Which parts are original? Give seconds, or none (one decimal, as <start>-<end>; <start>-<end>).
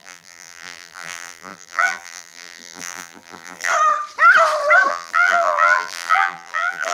3.7-4.9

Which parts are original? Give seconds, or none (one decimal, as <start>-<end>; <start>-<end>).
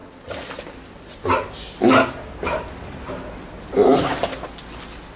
0.0-5.2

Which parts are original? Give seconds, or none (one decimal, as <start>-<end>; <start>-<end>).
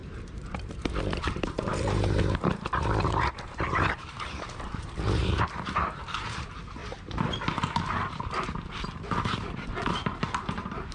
6.8-10.4